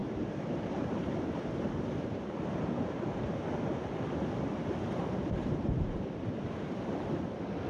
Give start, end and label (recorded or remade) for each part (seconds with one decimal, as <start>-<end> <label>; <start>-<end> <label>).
0.0-3.1 remade; 3.1-5.0 recorded; 5.0-7.1 remade; 7.1-7.7 recorded

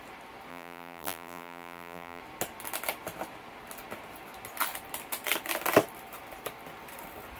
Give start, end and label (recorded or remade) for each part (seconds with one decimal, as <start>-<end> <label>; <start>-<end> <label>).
0.0-0.5 recorded; 0.5-2.2 remade; 2.2-7.4 recorded

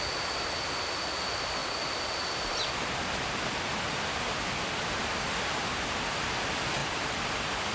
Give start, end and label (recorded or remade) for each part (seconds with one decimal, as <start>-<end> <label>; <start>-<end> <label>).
0.0-3.7 recorded; 3.7-4.4 remade; 4.4-7.7 recorded

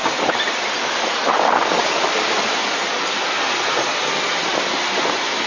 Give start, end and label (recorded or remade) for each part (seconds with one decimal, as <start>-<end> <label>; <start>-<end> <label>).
0.0-1.2 recorded; 1.2-1.8 remade; 1.8-5.5 recorded

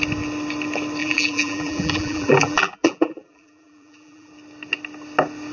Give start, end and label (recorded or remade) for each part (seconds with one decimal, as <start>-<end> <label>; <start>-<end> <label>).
0.0-1.0 recorded; 1.0-4.3 remade; 4.3-5.5 recorded